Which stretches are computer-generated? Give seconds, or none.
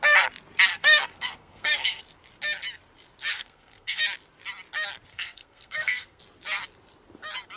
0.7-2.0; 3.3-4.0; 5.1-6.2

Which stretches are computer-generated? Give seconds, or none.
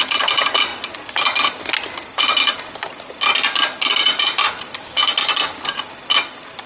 none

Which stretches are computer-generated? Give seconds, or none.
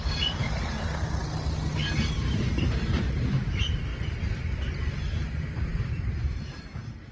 none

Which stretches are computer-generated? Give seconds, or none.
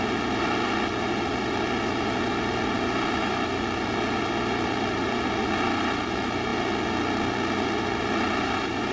none